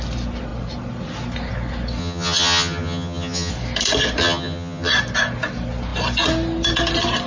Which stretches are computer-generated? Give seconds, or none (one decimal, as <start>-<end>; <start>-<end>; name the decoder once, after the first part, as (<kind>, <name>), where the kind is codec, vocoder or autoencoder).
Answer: 2.0-3.5 (vocoder, HiFi-GAN); 4.2-4.9